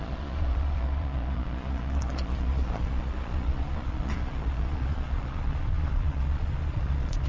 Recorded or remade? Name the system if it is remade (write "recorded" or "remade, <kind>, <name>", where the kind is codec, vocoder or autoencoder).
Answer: remade, vocoder, Vocos